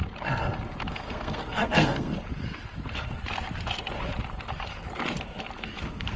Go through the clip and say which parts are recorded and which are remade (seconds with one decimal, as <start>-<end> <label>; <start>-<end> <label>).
0.0-0.9 recorded; 0.9-2.1 remade; 2.1-5.8 recorded; 5.8-6.2 remade